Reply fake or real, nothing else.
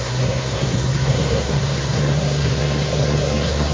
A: fake